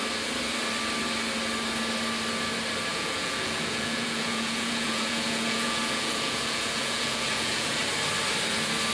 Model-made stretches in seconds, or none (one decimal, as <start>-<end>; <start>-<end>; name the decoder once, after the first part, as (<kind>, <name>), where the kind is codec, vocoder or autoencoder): 2.9-7.8 (vocoder, Vocos)